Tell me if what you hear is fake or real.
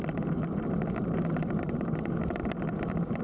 real